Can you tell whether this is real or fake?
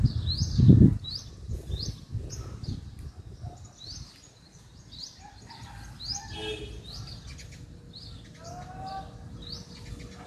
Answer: real